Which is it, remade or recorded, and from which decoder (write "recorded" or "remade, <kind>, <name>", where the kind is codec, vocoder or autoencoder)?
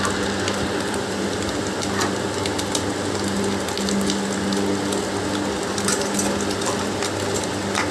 recorded